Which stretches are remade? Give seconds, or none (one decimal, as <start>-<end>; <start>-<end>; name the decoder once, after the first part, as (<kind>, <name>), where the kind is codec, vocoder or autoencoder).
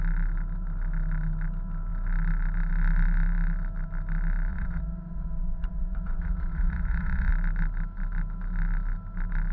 4.5-7.3 (vocoder, Vocos)